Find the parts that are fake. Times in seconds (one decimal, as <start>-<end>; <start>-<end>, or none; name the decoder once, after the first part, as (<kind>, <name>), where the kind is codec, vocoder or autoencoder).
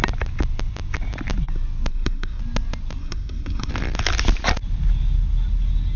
1.9-2.4 (codec, SNAC); 3.0-3.7